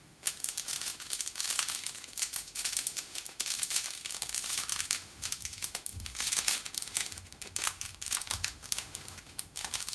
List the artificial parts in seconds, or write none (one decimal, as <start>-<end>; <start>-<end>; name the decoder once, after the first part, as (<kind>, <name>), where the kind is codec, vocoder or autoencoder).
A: 0.0-9.9 (autoencoder, DAC-VAE)